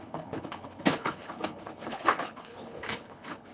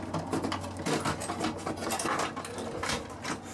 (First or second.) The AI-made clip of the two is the first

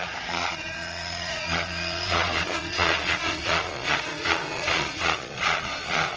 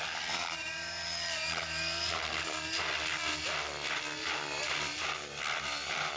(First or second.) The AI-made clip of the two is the first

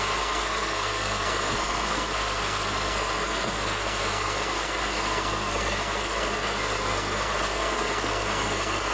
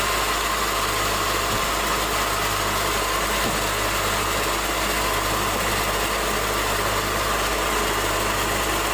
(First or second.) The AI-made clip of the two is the first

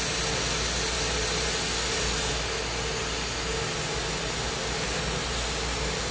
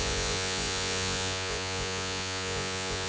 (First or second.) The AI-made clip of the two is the second